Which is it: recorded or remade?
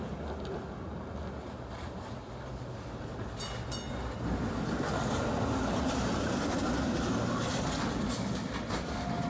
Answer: recorded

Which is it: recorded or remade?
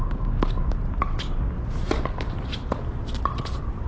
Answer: recorded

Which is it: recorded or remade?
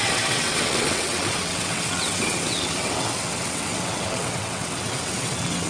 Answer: remade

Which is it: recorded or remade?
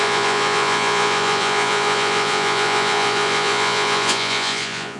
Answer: remade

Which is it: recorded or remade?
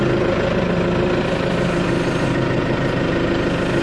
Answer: recorded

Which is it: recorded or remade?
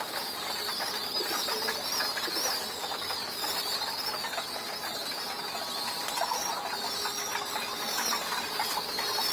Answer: recorded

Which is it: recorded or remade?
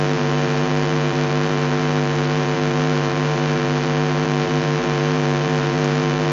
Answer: remade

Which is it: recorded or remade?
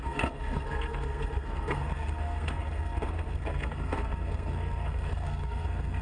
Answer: remade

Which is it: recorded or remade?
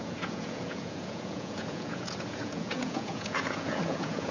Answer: remade